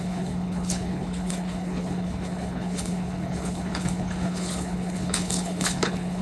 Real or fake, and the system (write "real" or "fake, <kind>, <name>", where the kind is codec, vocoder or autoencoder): fake, codec, HILCodec